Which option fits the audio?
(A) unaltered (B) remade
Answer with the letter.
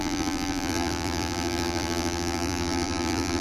B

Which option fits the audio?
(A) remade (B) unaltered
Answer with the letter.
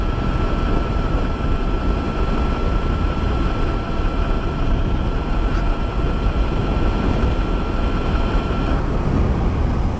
B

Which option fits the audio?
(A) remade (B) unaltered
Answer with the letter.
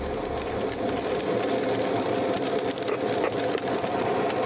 B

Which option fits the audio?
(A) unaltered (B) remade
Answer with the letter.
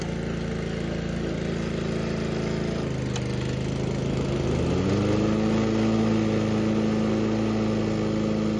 A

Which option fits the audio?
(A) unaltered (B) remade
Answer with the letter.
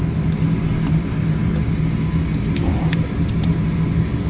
A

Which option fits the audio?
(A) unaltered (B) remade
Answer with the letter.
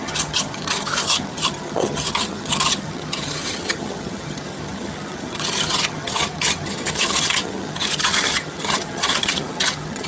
B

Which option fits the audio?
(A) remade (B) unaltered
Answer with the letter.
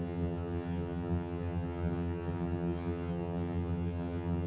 A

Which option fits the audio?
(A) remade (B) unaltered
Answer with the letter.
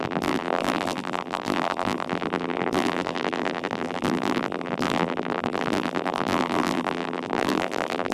A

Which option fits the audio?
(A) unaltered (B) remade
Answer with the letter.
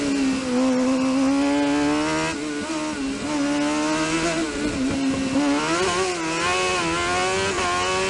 A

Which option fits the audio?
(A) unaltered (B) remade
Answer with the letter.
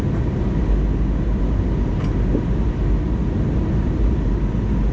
A